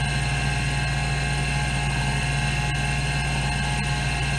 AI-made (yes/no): no